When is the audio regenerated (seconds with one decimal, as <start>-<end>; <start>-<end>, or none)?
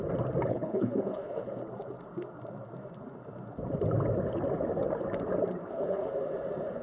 0.5-1.5; 5.6-6.1